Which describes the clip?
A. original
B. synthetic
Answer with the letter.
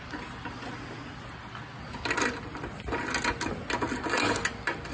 A